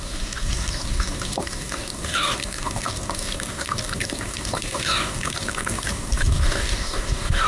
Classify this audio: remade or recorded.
remade